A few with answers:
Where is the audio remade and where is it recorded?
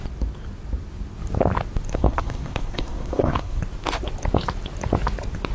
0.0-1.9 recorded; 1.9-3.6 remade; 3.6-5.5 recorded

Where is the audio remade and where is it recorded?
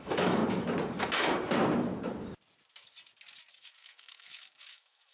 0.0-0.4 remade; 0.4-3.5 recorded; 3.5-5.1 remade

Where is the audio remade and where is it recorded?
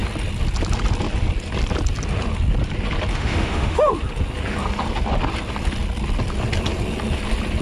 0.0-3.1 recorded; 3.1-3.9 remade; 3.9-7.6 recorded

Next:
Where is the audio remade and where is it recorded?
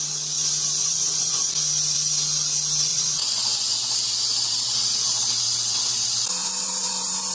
0.0-0.8 recorded; 0.8-1.5 remade; 1.5-2.9 recorded; 2.9-3.7 remade; 3.7-6.4 recorded; 6.4-7.3 remade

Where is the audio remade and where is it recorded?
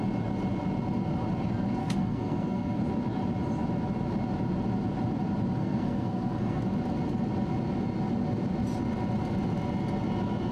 0.0-1.8 recorded; 1.8-2.8 remade; 2.8-5.6 recorded; 5.6-6.6 remade; 6.6-10.5 recorded